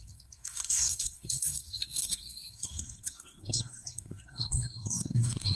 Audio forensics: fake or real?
fake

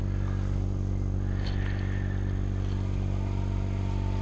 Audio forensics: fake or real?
real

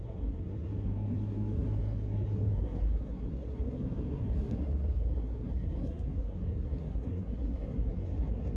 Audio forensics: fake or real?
fake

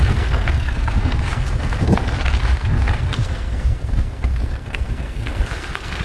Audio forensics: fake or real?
fake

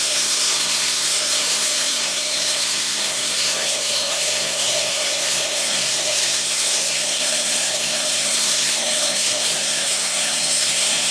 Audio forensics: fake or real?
fake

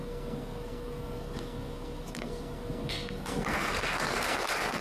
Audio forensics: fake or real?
fake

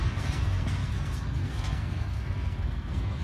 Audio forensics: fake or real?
fake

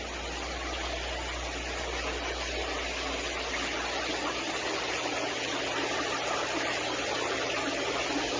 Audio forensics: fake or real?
real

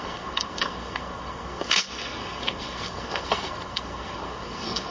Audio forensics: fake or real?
fake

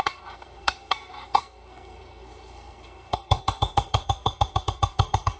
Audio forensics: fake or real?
fake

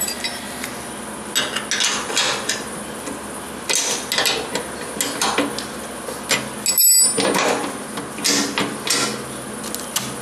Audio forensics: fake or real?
real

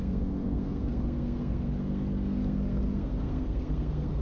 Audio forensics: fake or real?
fake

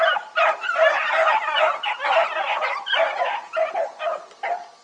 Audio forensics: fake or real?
real